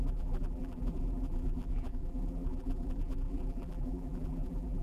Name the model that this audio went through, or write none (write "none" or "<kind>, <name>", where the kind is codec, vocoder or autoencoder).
vocoder, BigVGAN v2